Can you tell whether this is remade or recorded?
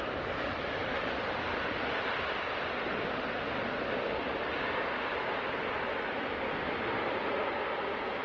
recorded